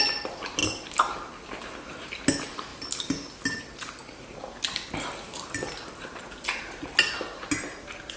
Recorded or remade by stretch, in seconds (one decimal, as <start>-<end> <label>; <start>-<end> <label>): 0.0-8.2 recorded